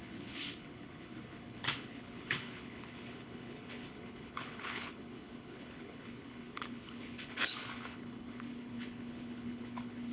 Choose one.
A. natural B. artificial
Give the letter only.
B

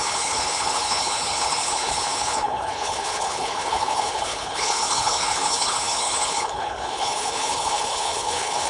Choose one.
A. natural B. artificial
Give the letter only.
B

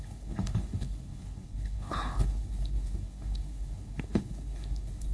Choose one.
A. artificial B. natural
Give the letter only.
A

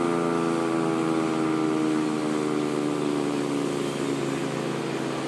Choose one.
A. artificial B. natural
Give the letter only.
B